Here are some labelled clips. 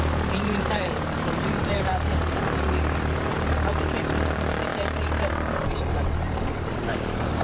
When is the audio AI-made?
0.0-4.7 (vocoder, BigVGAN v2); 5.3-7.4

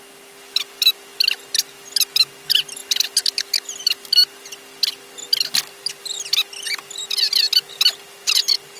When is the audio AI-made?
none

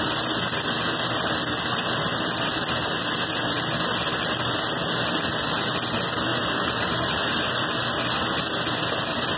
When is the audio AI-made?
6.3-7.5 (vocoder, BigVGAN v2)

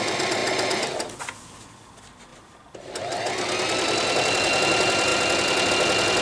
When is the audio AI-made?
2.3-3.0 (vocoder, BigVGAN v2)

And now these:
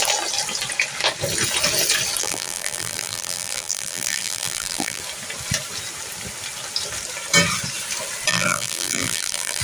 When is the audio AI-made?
2.2-5.0 (vocoder, BigVGAN v2); 8.3-9.6

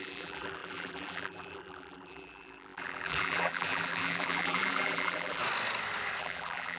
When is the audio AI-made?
0.0-5.4 (vocoder, BigVGAN v2); 6.2-6.8